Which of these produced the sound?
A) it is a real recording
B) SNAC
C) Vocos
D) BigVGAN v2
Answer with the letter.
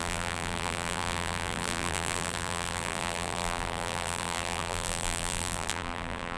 D